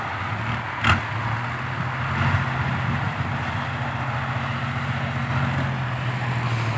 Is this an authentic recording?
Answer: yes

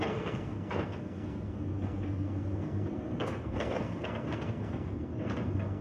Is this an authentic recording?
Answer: no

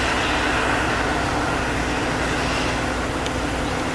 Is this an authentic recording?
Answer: yes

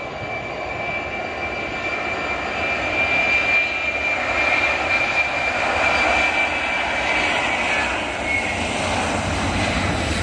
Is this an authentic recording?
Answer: yes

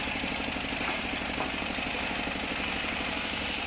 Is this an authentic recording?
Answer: yes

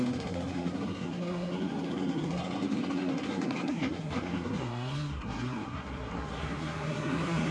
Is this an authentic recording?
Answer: no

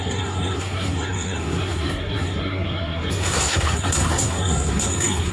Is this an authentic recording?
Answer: no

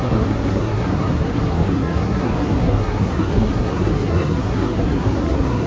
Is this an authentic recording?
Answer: no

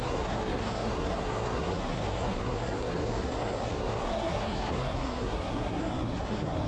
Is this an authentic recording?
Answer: no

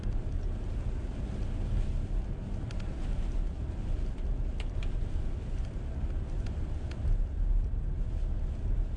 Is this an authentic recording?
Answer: yes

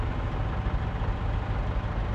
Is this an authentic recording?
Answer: yes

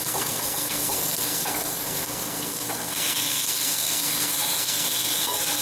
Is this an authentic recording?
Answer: no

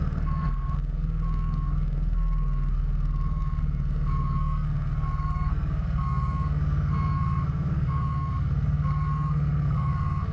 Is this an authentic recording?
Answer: no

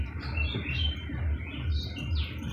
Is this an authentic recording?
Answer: yes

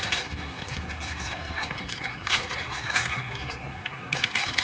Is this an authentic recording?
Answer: no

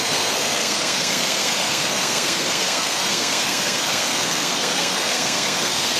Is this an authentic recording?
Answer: no